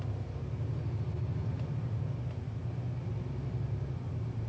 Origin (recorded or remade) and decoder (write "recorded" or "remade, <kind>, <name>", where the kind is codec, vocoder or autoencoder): recorded